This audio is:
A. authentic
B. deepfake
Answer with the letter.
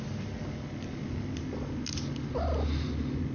A